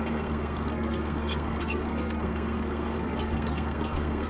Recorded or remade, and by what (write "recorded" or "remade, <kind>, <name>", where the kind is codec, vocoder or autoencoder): remade, codec, SNAC